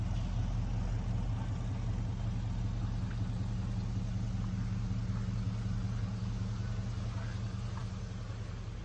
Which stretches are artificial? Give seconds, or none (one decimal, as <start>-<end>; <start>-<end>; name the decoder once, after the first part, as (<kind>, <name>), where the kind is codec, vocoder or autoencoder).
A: none